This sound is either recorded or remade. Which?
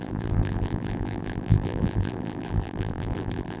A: remade